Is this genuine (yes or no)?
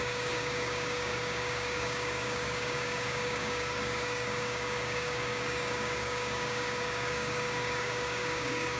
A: no